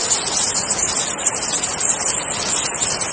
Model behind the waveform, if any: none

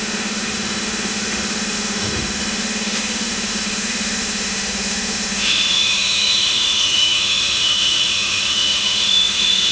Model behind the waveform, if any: autoencoder, DAC-VAE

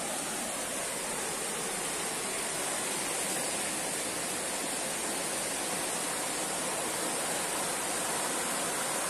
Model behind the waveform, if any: none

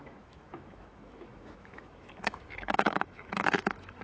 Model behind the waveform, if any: autoencoder, DAC-VAE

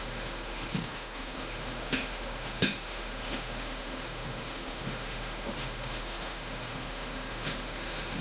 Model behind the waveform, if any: autoencoder, DAC-VAE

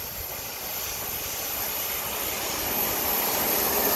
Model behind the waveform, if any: none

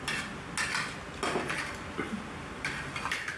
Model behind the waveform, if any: none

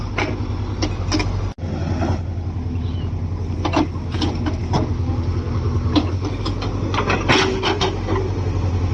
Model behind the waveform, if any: none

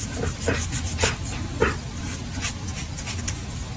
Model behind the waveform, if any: none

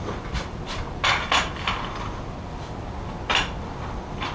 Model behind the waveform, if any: none